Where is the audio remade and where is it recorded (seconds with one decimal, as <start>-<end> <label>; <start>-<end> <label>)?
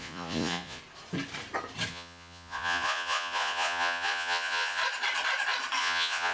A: 0.0-0.8 remade; 0.8-1.9 recorded; 1.9-4.8 remade; 4.8-5.8 recorded; 5.8-6.3 remade